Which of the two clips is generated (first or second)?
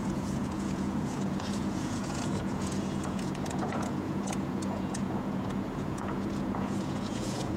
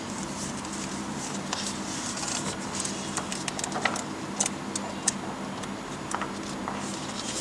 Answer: first